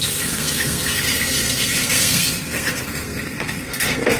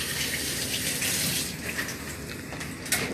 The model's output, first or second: first